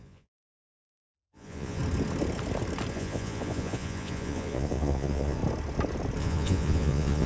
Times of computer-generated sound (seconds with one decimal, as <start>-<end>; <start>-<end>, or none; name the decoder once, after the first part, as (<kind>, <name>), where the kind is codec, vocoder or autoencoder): 0.0-1.8 (vocoder, Vocos); 2.9-5.4; 6.2-7.3